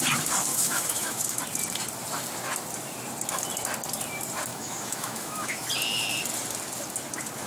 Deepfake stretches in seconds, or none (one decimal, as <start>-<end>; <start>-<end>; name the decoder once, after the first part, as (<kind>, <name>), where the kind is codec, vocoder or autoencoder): 0.5-1.4 (autoencoder, DAC-VAE); 4.5-5.7